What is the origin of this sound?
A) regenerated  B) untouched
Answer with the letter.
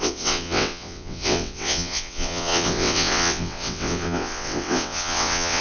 A